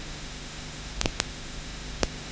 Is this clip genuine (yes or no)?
no